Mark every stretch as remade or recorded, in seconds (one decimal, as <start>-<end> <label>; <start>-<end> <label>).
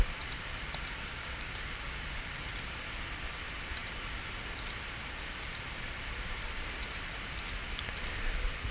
0.0-1.1 recorded; 1.1-1.7 remade; 1.7-8.7 recorded